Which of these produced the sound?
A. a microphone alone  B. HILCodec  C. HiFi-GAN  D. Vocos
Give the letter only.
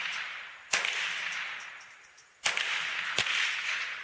A